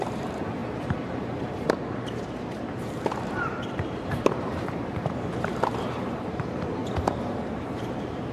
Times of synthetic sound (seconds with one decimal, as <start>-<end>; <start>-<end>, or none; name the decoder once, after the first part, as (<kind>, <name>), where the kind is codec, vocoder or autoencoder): 0.0-8.3 (vocoder, BigVGAN v2)